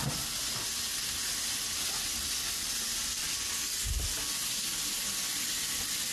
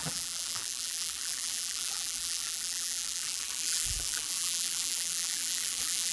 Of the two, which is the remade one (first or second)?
second